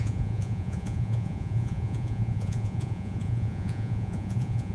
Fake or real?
fake